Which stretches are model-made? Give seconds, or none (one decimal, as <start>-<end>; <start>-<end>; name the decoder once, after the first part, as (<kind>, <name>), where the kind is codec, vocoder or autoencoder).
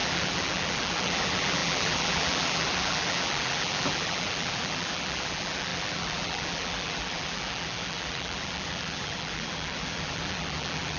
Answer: 0.0-11.0 (vocoder, BigVGAN v2)